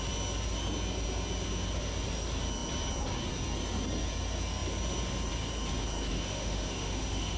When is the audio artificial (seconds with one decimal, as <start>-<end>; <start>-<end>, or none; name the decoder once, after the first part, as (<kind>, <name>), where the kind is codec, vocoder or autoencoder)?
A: 6.1-7.4 (autoencoder, DAC-VAE)